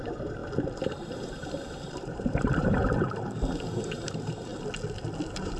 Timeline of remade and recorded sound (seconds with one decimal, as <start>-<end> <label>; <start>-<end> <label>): 0.0-0.4 remade; 0.4-0.9 recorded; 0.9-2.8 remade; 2.8-3.7 recorded; 3.7-4.5 remade; 4.5-5.6 recorded